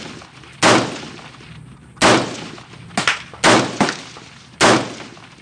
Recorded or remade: recorded